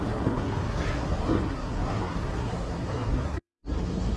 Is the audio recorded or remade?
remade